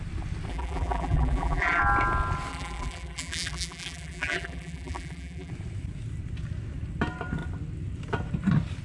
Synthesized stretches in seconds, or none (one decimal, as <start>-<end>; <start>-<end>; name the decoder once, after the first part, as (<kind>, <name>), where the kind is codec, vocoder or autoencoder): 0.5-1.8 (vocoder, BigVGAN v2); 2.5-5.5